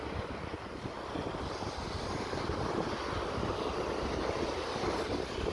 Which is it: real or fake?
real